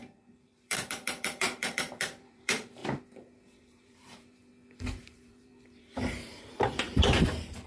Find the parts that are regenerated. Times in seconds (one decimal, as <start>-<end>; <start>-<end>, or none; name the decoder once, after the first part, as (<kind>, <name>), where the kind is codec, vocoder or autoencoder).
0.0-2.8 (vocoder, BigVGAN v2); 3.6-4.4; 5.0-7.7